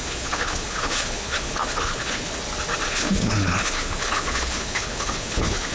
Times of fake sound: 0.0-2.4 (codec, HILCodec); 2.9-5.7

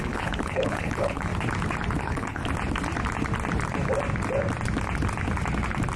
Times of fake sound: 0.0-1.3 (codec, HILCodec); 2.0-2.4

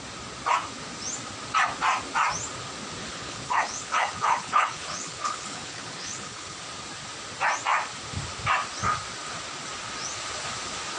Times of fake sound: 3.0-6.6 (codec, HILCodec)

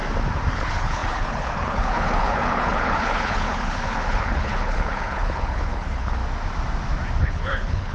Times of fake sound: 0.5-6.2 (codec, HILCodec); 7.2-7.9

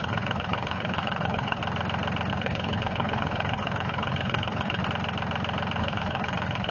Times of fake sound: 0.0-1.6 (codec, HILCodec); 2.3-4.8; 5.8-6.7

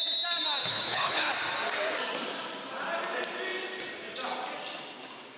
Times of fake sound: 0.7-1.3 (codec, HILCodec)

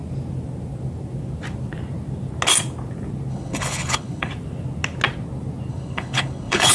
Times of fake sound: 3.3-4.3 (codec, HILCodec); 5.7-6.7